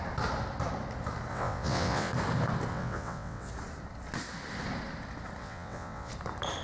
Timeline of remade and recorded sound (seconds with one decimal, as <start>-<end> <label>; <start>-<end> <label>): 0.0-1.3 recorded; 1.3-2.1 remade; 2.1-2.7 recorded; 2.7-3.5 remade; 3.5-5.4 recorded; 5.4-6.1 remade; 6.1-6.6 recorded